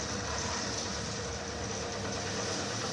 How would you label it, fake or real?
real